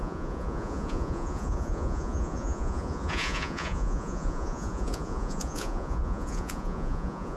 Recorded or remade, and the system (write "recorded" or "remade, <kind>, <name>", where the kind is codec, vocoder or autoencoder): remade, vocoder, Vocos